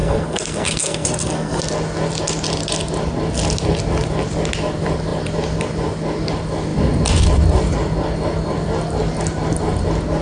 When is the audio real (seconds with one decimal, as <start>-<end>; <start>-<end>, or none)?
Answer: 1.6-10.2